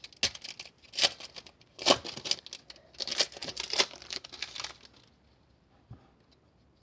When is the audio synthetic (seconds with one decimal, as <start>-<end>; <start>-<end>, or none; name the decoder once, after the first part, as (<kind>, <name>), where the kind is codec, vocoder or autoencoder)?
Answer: 3.4-4.3 (vocoder, BigVGAN v2)